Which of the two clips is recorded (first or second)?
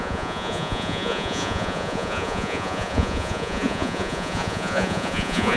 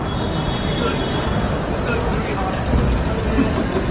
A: second